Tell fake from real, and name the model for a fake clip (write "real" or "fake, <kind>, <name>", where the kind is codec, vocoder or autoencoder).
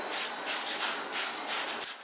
real